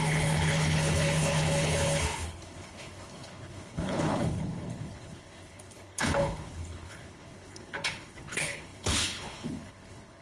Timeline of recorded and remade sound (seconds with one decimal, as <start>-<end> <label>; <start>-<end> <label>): 0.0-10.2 remade